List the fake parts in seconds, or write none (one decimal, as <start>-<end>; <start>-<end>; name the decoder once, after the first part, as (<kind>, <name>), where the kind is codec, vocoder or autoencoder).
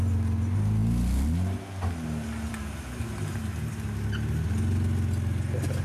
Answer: none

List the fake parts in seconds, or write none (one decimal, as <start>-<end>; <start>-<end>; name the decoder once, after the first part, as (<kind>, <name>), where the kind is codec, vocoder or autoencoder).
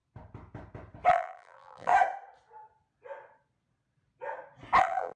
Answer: 1.1-1.9 (vocoder, BigVGAN v2); 4.8-5.2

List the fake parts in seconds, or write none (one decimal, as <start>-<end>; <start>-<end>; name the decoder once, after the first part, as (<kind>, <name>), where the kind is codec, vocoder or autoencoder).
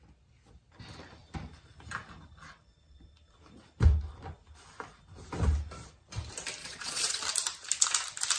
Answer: 6.6-7.2 (vocoder, Vocos)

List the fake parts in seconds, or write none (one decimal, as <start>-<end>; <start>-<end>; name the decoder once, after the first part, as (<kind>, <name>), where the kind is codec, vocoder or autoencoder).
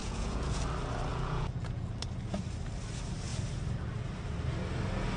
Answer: 0.0-0.6 (vocoder, Vocos); 1.1-1.9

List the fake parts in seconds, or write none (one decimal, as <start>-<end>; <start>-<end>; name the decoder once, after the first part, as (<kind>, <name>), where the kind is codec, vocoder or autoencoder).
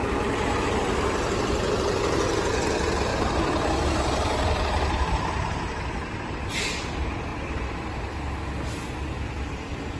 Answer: 3.1-6.2 (vocoder, BigVGAN v2)